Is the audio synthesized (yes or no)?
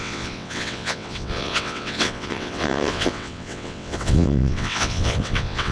yes